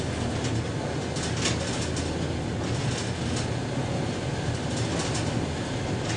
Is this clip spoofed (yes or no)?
no